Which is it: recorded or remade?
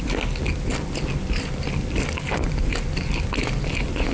recorded